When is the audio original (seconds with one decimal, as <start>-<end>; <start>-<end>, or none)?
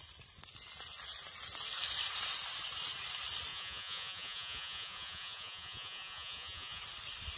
0.0-3.5; 6.8-7.4